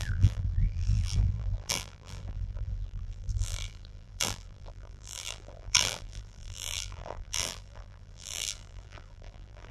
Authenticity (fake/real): fake